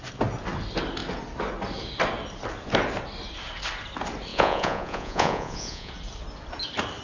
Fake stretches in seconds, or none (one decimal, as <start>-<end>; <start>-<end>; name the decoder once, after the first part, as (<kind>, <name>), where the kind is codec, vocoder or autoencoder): 4.3-5.9 (vocoder, Vocos)